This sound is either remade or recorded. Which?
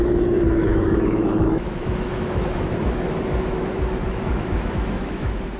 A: remade